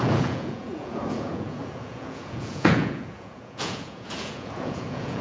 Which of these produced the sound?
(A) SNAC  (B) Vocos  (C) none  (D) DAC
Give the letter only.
B